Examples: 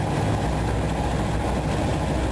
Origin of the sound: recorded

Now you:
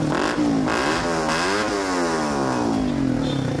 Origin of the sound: recorded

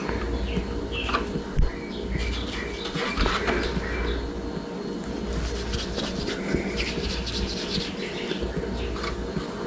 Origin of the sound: recorded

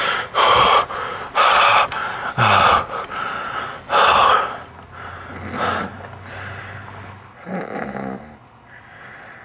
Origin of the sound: recorded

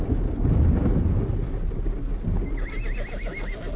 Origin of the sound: recorded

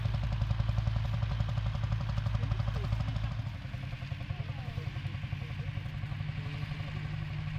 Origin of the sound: recorded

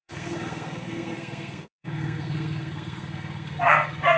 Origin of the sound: remade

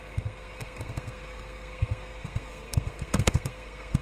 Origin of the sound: remade